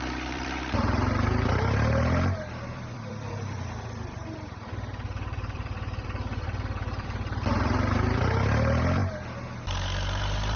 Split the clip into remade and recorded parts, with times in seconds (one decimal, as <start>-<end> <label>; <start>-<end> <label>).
0.0-9.0 remade; 9.0-10.2 recorded; 10.2-10.6 remade